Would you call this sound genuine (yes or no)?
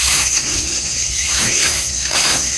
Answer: no